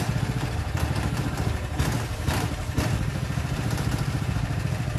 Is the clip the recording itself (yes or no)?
no